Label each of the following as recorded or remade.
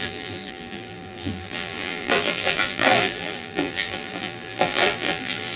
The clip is remade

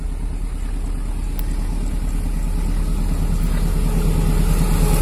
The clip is recorded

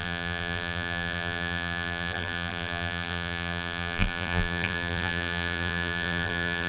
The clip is remade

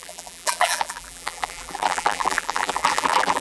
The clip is remade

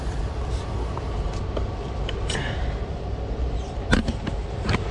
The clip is recorded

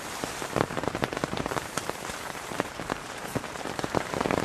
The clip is remade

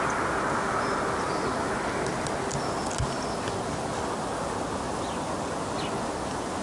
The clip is recorded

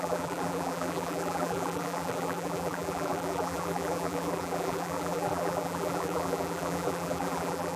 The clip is remade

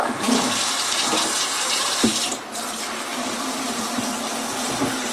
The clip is remade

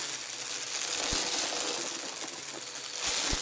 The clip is recorded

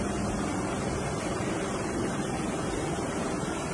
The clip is remade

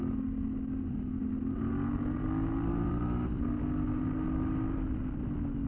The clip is recorded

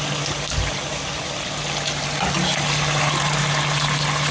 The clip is recorded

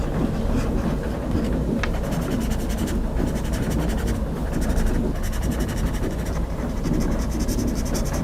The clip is recorded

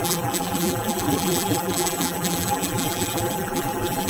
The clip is remade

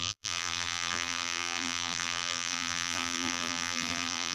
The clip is remade